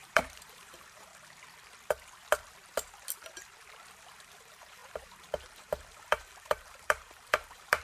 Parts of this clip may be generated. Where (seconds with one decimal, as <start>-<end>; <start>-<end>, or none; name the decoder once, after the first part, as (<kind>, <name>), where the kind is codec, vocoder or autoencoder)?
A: 0.0-1.1 (vocoder, BigVGAN v2); 4.1-7.8